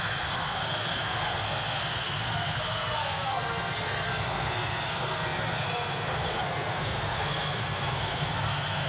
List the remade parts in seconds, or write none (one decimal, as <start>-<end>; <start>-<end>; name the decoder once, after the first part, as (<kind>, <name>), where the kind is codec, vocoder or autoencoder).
0.0-8.9 (codec, SNAC)